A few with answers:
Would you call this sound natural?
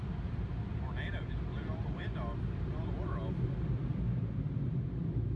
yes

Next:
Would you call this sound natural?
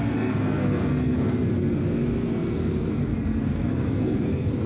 no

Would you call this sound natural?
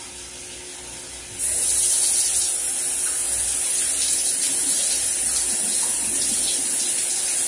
yes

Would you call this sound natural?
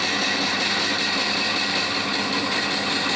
yes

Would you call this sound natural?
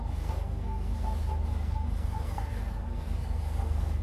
no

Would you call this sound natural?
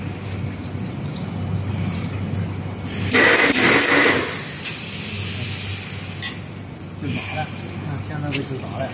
yes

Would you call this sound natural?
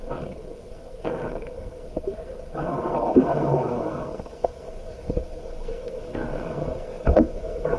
no